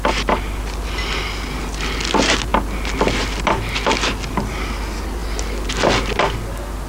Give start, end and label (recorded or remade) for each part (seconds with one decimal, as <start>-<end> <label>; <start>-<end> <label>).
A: 0.0-6.9 recorded